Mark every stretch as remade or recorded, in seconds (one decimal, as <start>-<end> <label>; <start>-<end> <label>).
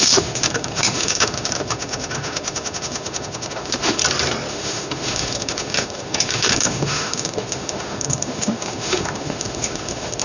0.0-4.0 remade; 4.0-4.5 recorded; 4.5-10.2 remade